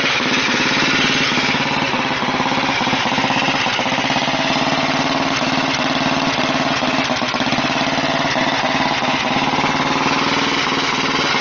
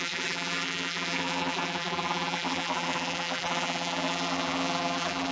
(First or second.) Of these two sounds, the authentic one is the first